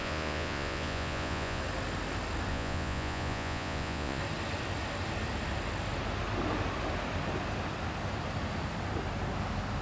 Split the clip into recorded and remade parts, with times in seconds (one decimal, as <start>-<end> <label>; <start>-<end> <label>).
0.0-1.6 remade; 1.6-2.5 recorded; 2.5-4.2 remade; 4.2-9.8 recorded